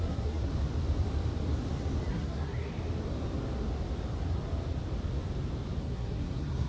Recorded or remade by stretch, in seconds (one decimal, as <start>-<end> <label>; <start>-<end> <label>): 0.0-0.5 remade; 0.5-2.1 recorded; 2.1-2.8 remade; 2.8-5.8 recorded; 5.8-6.7 remade